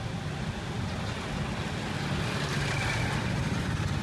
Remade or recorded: recorded